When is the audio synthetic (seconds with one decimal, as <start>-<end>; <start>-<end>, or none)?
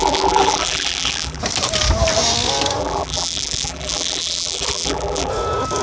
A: 0.0-1.4; 2.8-5.3